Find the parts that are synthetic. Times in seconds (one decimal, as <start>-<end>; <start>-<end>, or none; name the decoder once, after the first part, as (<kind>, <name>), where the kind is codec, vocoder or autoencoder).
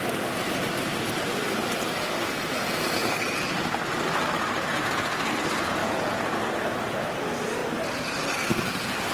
4.7-5.3 (vocoder, Vocos); 5.8-6.3